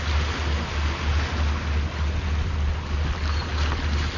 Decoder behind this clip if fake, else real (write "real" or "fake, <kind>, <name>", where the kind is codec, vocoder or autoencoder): real